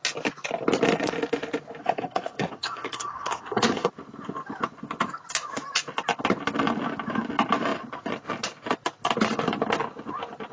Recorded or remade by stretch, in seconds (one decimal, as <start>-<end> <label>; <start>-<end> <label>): 0.0-1.8 recorded; 1.8-3.9 remade; 3.9-10.5 recorded